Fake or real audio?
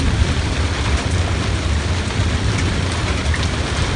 real